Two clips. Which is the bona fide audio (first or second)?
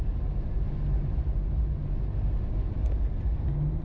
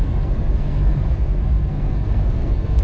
first